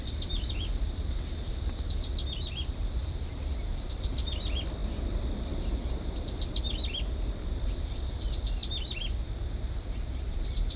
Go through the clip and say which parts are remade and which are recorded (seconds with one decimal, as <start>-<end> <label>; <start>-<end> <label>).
0.0-4.8 remade; 4.8-7.6 recorded; 7.6-8.6 remade; 8.6-10.2 recorded; 10.2-10.8 remade